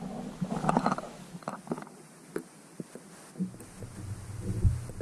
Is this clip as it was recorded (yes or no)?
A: yes